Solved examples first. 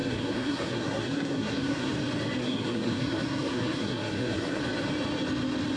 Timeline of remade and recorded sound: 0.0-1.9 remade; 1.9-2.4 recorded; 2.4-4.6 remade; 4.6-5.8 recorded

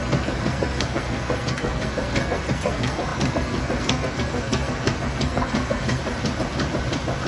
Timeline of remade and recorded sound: 0.0-6.0 remade; 6.0-7.3 recorded

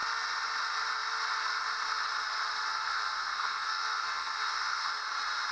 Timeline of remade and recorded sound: 0.0-2.7 recorded; 2.7-4.9 remade; 4.9-5.5 recorded

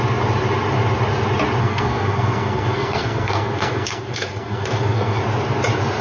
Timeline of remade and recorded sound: 0.0-1.6 recorded; 1.6-5.2 remade; 5.2-6.0 recorded

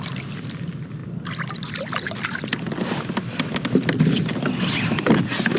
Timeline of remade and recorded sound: 0.0-1.0 recorded; 1.0-4.4 remade; 4.4-5.6 recorded

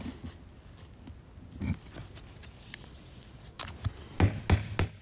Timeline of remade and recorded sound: 0.0-2.8 recorded; 2.8-3.6 remade; 3.6-5.0 recorded